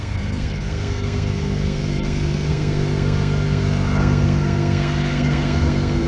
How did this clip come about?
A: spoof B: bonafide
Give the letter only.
A